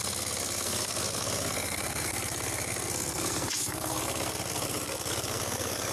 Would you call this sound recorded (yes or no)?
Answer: no